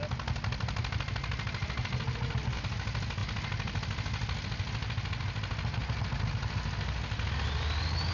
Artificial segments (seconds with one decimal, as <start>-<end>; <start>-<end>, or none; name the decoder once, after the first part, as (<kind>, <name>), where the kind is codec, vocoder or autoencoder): none